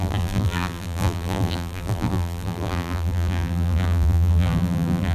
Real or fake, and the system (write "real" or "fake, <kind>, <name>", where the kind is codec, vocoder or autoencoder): fake, vocoder, BigVGAN v2